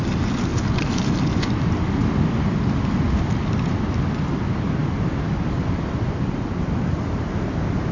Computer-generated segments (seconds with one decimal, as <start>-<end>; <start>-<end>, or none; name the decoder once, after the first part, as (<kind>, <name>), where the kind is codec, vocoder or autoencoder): none